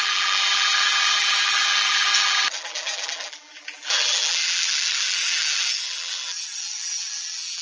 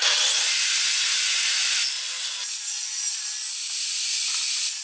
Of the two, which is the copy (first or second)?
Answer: first